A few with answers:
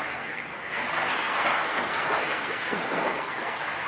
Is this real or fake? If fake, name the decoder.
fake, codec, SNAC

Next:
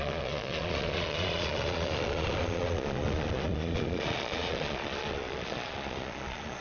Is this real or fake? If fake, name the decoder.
fake, vocoder, Vocos